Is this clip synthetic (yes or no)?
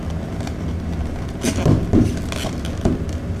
no